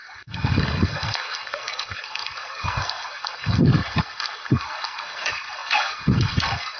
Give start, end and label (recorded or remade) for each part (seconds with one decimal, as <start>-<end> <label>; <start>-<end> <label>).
0.0-6.8 remade